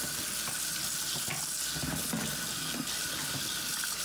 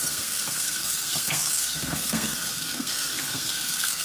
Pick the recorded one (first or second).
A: first